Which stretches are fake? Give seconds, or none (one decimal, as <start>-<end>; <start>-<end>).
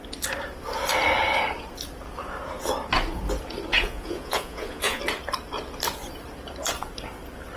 3.7-5.0